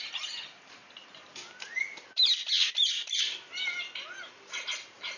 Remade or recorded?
recorded